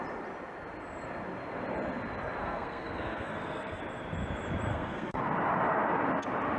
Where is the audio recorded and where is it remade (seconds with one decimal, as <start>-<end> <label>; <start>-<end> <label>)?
0.0-2.4 recorded; 2.4-3.8 remade; 3.8-4.7 recorded; 4.7-5.2 remade; 5.2-6.6 recorded